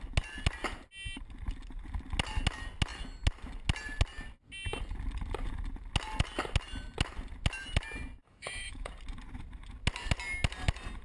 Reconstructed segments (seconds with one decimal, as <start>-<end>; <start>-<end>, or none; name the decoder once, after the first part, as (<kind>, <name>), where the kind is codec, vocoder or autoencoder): 8.2-8.9 (autoencoder, DAC-VAE)

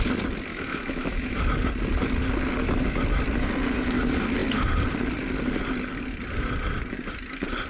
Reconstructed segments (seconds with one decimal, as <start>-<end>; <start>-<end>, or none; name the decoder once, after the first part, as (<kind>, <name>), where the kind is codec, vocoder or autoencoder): 0.5-1.4 (autoencoder, DAC-VAE)

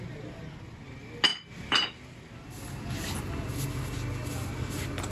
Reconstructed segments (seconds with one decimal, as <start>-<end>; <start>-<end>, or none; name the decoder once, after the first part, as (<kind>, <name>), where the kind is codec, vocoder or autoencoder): none

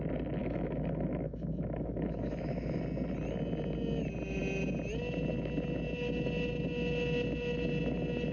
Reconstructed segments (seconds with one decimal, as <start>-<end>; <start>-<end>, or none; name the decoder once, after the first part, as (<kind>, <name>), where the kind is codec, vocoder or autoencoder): 0.4-2.8 (autoencoder, DAC-VAE)

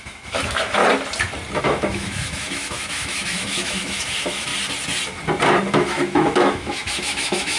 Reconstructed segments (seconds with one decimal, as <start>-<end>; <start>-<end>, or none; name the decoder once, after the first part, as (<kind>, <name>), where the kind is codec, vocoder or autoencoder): 0.0-0.8 (autoencoder, DAC-VAE); 1.6-4.5; 5.7-7.6